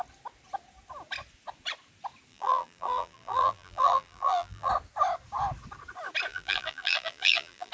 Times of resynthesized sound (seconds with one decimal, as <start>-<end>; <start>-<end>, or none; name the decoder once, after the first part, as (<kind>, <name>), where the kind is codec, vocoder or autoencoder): 2.3-4.7 (vocoder, BigVGAN v2); 6.3-7.7